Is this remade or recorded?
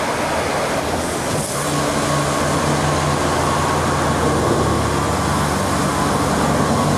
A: recorded